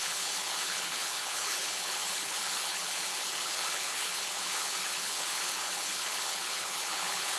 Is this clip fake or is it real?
fake